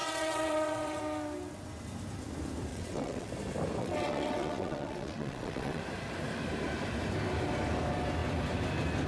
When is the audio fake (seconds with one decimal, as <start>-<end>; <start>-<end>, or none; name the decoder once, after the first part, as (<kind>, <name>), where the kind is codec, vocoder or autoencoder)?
0.0-1.0 (vocoder, WaveNeXt); 2.7-3.3; 3.8-5.8

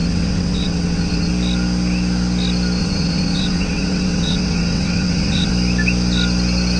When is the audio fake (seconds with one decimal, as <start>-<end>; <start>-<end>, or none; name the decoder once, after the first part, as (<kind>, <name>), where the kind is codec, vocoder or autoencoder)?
0.0-1.3 (vocoder, WaveNeXt); 2.8-5.5

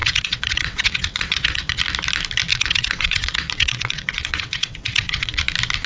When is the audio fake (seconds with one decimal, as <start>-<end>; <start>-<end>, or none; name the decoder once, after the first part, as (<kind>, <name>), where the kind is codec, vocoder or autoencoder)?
0.0-1.8 (vocoder, WaveNeXt); 2.5-5.4

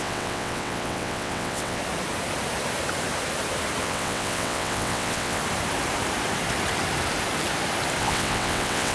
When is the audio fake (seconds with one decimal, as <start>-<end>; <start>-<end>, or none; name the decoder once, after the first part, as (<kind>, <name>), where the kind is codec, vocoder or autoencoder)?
0.0-1.8 (vocoder, WaveNeXt); 3.8-5.4; 8.0-8.9

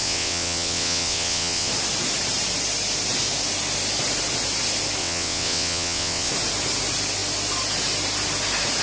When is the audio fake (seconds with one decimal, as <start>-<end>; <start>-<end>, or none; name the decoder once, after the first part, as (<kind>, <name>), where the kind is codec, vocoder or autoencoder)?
0.0-1.7 (vocoder, WaveNeXt); 5.0-6.3

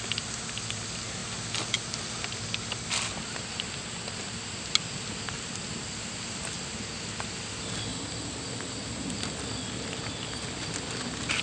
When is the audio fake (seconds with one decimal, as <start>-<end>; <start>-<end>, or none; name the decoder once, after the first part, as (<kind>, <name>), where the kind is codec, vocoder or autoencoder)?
none

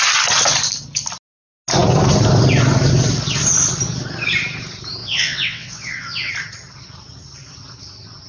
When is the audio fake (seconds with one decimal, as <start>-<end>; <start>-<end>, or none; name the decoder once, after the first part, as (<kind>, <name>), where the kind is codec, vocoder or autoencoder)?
5.0-6.3 (vocoder, WaveNeXt)